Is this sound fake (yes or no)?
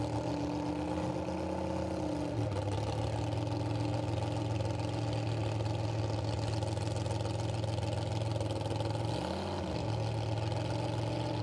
no